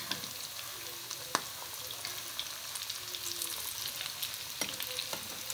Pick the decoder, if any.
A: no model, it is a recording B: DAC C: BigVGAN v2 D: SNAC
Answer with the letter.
A